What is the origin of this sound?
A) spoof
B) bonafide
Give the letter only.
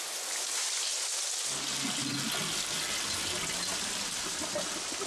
B